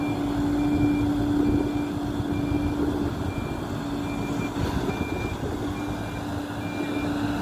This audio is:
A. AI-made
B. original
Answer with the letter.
B